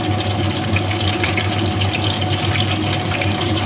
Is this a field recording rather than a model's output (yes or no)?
yes